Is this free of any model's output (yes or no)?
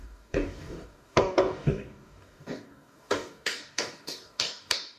no